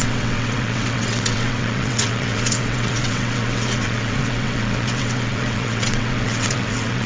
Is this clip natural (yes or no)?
no